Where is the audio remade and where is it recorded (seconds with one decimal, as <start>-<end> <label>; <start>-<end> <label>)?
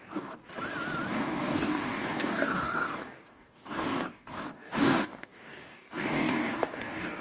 0.0-0.4 remade; 0.4-1.1 recorded; 1.1-7.2 remade